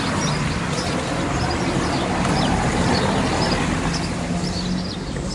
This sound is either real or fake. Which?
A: real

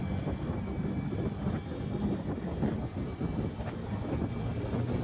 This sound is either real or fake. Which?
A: real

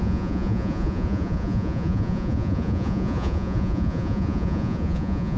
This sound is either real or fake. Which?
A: fake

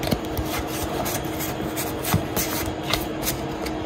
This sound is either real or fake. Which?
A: real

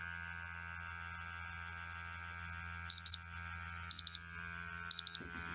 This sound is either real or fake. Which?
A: real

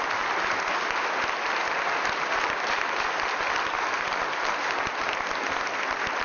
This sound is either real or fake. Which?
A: real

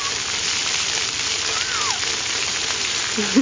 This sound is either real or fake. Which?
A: real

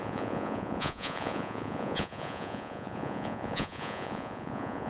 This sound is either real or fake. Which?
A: fake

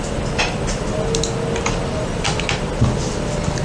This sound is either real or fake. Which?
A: real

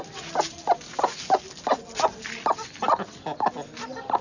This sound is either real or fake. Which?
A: real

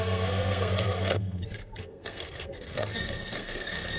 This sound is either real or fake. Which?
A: fake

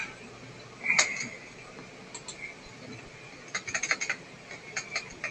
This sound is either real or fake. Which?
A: real